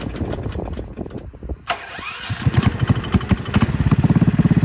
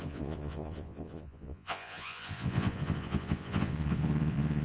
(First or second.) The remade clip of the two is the second